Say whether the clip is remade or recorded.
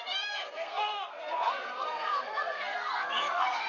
remade